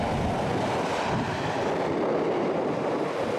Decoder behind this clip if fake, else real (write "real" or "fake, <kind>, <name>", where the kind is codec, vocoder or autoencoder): real